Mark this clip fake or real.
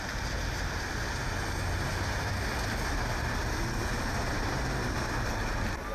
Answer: real